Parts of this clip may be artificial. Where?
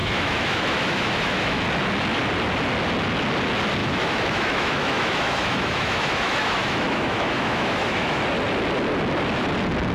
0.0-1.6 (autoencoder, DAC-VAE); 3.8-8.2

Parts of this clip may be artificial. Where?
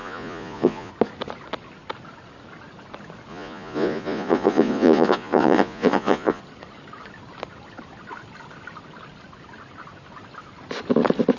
0.0-0.9 (vocoder, Vocos); 3.3-6.4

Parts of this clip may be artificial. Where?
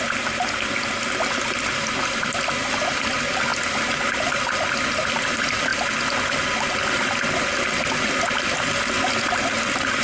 none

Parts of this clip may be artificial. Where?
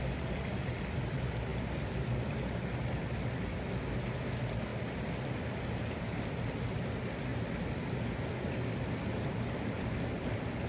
none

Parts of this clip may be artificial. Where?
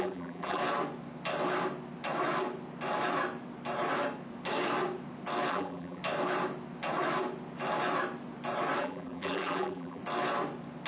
0.0-0.6 (vocoder, BigVGAN v2); 5.5-6.0; 8.8-10.0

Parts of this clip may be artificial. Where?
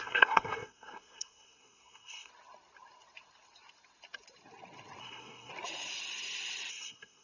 0.0-2.3 (codec, SNAC); 5.0-5.5; 6.7-7.2